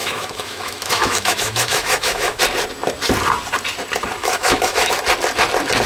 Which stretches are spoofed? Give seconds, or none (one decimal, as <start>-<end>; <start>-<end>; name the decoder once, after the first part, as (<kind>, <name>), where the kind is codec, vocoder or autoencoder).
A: 0.0-2.4 (autoencoder, DAC-VAE); 4.2-4.9

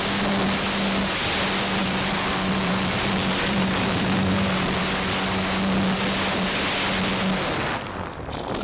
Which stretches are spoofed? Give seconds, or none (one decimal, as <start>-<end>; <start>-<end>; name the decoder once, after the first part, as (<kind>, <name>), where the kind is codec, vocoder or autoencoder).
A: 1.8-4.8 (vocoder, BigVGAN v2)